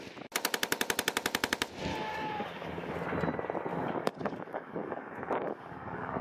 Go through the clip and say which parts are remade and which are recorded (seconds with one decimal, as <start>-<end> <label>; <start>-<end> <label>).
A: 0.0-1.9 recorded; 1.9-2.9 remade; 2.9-3.7 recorded; 3.7-6.2 remade